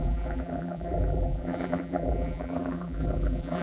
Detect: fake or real fake